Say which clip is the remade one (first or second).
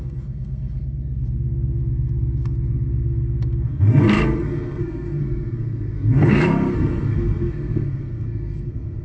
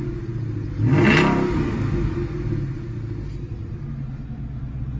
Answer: first